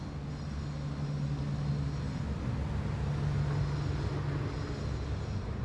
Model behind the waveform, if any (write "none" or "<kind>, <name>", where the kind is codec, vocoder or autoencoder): none